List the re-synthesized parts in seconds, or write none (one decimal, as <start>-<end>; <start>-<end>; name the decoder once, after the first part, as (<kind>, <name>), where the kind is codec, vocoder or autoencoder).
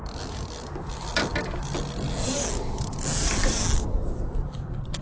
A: none